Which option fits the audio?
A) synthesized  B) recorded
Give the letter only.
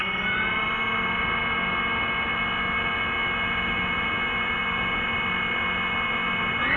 B